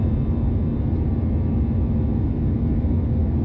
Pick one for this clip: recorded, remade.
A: recorded